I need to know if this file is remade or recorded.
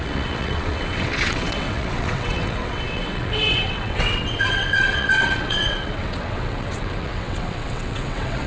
remade